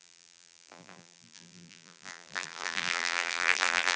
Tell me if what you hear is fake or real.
fake